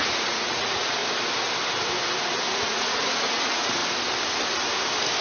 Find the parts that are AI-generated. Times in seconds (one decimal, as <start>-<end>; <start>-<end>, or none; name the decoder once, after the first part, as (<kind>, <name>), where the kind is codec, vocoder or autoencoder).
0.0-1.0 (vocoder, Vocos); 2.5-3.8